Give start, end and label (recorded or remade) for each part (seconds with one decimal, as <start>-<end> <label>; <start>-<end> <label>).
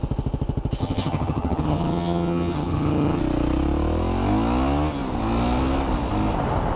0.0-0.8 recorded; 0.8-3.2 remade; 3.2-6.8 recorded